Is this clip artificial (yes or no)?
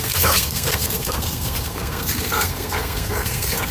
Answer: yes